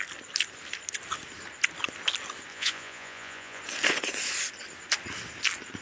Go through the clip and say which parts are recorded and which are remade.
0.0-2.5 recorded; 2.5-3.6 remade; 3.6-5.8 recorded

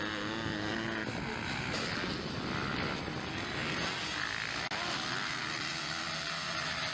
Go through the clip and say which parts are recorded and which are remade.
0.0-6.9 recorded